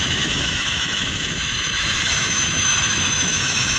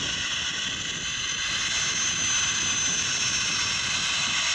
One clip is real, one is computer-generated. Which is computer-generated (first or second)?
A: first